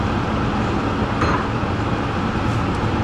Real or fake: real